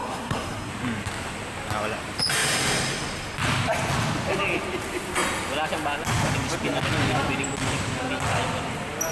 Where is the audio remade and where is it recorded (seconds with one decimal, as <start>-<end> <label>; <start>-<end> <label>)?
0.0-0.7 remade; 0.7-9.1 recorded